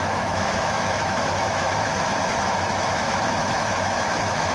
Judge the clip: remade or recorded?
remade